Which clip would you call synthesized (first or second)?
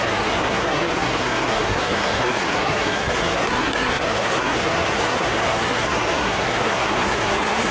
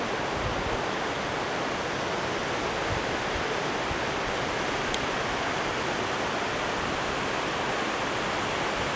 first